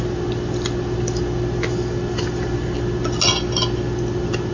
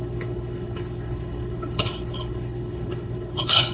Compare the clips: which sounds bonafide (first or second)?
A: first